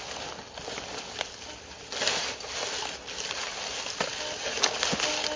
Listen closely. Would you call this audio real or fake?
real